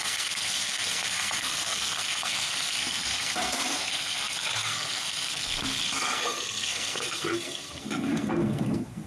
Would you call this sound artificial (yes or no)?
yes